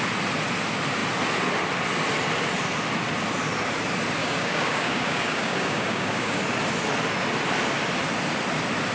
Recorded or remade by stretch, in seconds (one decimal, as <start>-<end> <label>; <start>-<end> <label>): 0.0-4.2 recorded; 4.2-6.4 remade; 6.4-8.9 recorded